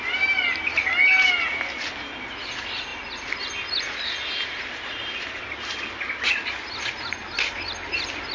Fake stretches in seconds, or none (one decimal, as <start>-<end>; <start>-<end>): none